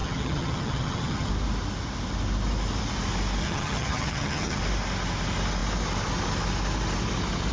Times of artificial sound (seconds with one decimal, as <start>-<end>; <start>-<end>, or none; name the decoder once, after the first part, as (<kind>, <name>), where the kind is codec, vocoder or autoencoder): 0.0-1.3 (vocoder, HiFi-GAN); 3.4-4.6